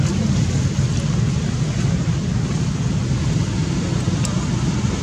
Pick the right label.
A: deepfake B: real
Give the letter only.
B